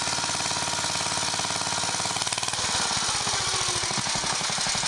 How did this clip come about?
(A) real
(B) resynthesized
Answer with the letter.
A